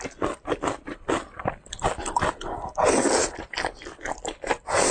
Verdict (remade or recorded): recorded